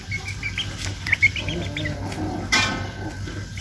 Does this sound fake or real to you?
real